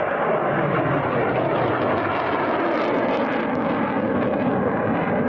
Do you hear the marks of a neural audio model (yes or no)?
no